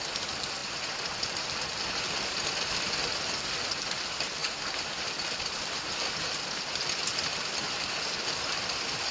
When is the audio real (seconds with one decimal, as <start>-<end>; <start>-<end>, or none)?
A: 0.0-9.1